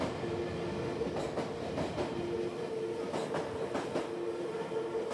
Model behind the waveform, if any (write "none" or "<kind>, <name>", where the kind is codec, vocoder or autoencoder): none